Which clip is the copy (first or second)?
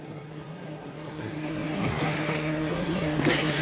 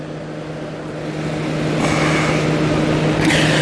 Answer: first